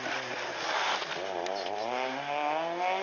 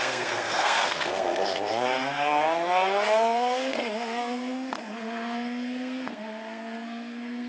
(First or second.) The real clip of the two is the first